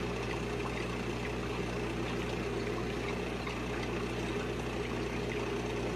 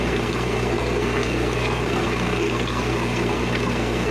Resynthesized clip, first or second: second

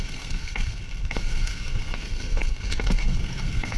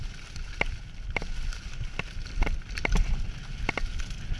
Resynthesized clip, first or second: first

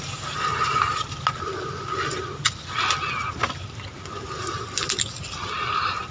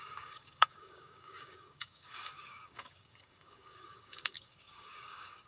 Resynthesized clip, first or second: second